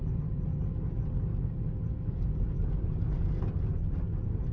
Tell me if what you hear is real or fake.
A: real